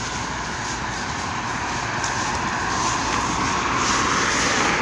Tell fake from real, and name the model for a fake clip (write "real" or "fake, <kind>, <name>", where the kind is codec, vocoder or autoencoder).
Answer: real